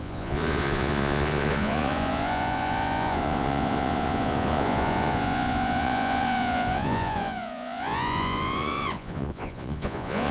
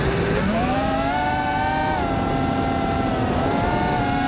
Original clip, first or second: second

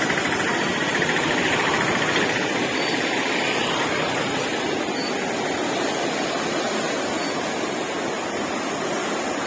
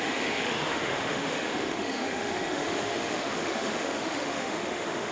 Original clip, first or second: first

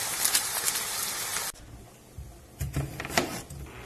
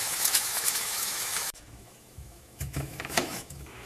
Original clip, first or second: first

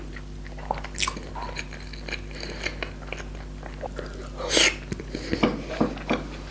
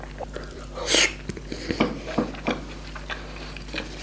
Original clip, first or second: first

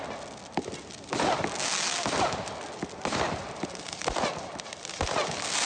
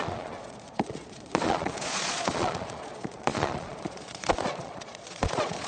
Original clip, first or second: first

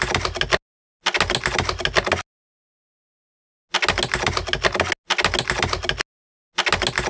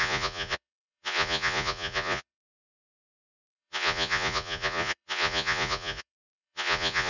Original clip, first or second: first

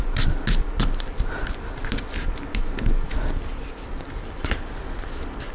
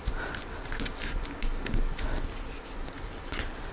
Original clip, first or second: second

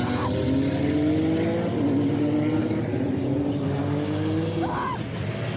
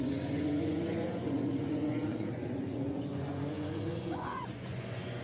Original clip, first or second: first